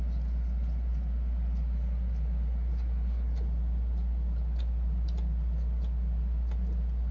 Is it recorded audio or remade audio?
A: recorded